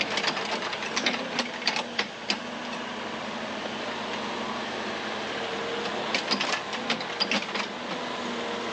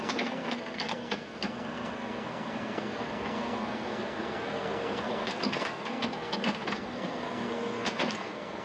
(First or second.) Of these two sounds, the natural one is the first